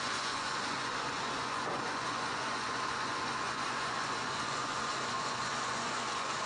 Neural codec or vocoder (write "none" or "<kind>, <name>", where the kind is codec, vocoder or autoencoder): vocoder, Vocos